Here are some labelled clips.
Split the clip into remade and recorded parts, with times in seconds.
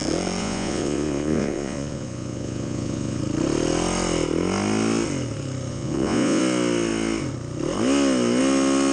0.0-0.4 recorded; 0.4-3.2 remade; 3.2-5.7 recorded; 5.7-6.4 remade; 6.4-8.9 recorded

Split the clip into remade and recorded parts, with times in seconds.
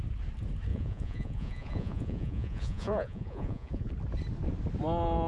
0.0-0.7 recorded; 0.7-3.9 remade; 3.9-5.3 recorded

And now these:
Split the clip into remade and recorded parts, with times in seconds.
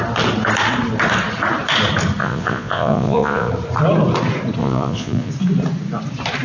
0.0-2.2 recorded; 2.2-3.5 remade; 3.5-4.6 recorded; 4.6-5.3 remade; 5.3-6.4 recorded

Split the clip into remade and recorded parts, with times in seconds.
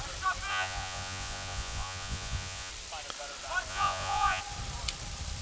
0.0-0.5 recorded; 0.5-2.7 remade; 2.7-3.7 recorded; 3.7-4.4 remade; 4.4-5.4 recorded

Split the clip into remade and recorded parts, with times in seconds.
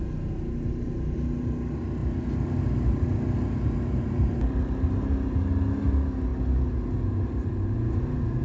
0.0-8.4 recorded